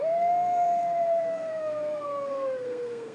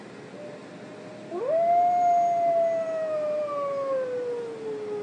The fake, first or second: first